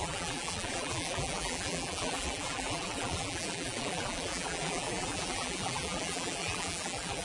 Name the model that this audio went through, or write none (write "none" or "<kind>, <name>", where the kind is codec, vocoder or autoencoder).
vocoder, BigVGAN v2